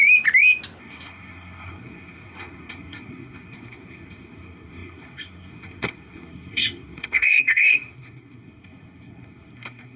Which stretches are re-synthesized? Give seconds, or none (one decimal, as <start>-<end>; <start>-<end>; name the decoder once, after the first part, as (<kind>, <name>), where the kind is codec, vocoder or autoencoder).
0.8-10.0 (codec, SNAC)